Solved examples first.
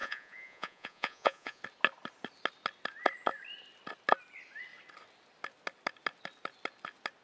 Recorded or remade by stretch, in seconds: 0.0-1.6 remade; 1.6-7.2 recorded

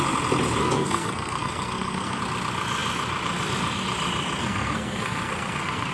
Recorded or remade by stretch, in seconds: 0.0-0.6 recorded; 0.6-2.2 remade; 2.2-4.4 recorded; 4.4-5.9 remade

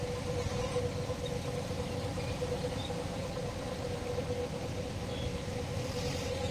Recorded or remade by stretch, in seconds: 0.0-6.5 recorded

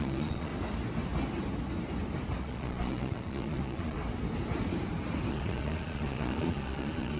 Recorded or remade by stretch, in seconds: 0.0-0.5 remade; 0.5-2.4 recorded; 2.4-4.0 remade; 4.0-5.3 recorded; 5.3-7.2 remade

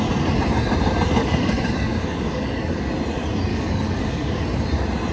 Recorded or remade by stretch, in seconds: 0.0-1.2 recorded; 1.2-2.9 remade; 2.9-3.5 recorded; 3.5-4.4 remade; 4.4-5.1 recorded